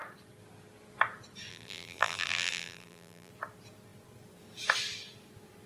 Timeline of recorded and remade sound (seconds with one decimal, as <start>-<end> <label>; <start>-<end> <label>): 0.0-1.5 recorded; 1.5-3.3 remade; 3.3-5.7 recorded